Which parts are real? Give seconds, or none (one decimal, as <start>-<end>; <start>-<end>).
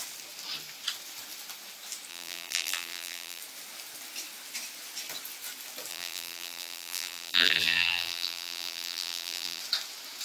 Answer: 0.0-2.1; 3.4-5.9; 9.6-10.2